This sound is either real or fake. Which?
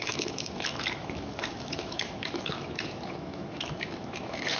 fake